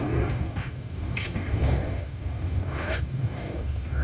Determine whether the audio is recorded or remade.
remade